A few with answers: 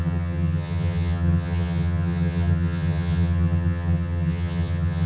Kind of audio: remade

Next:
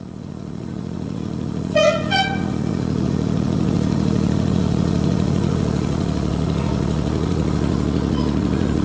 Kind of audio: remade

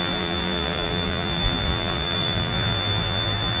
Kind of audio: remade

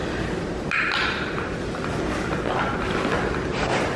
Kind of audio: recorded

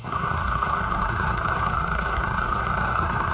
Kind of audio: remade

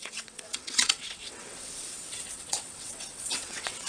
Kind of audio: remade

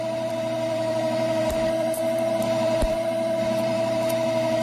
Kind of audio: remade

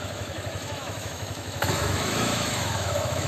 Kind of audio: remade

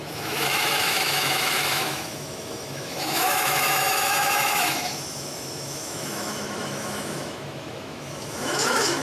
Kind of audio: remade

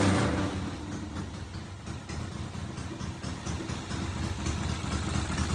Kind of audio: recorded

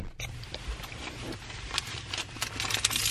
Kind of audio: recorded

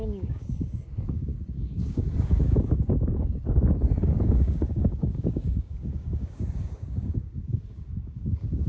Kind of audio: remade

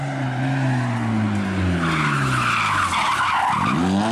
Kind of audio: recorded